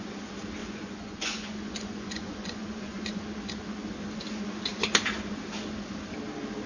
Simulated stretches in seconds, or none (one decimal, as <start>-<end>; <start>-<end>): 0.6-3.2